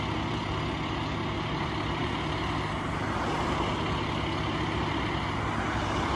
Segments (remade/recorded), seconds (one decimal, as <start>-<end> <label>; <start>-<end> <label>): 0.0-6.2 recorded

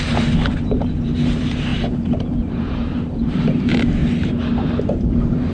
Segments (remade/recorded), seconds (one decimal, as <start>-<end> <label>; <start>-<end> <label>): 0.0-4.0 remade; 4.0-4.8 recorded; 4.8-5.5 remade

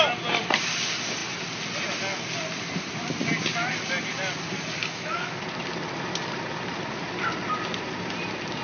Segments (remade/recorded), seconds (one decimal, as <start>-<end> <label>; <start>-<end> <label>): 0.0-4.8 recorded; 4.8-5.4 remade; 5.4-8.6 recorded

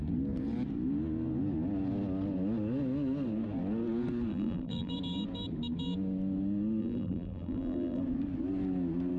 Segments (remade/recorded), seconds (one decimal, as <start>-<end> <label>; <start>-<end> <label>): 0.0-4.3 recorded; 4.3-4.9 remade; 4.9-6.8 recorded; 6.8-8.0 remade; 8.0-9.2 recorded

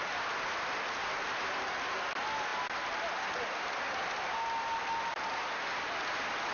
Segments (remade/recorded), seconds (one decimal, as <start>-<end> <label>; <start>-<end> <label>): 0.0-6.5 recorded

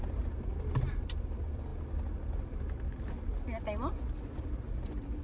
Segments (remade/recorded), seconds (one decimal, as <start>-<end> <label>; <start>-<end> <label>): 0.0-5.2 recorded